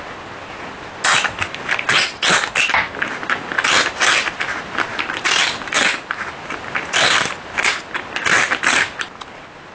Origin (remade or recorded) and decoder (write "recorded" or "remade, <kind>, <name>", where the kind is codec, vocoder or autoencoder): recorded